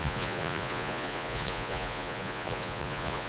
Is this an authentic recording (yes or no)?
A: no